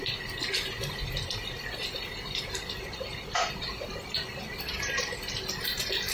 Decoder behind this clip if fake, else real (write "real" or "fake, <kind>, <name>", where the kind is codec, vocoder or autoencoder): real